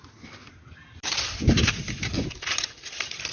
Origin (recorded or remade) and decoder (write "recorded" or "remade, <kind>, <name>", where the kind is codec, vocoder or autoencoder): recorded